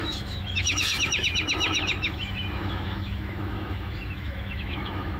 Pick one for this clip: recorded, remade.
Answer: remade